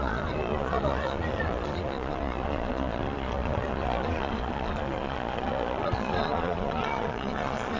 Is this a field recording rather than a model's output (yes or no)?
no